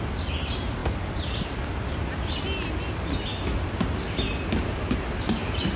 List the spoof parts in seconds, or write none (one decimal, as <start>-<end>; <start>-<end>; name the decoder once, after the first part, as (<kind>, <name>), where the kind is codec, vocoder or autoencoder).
none